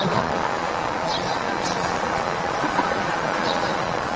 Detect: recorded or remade remade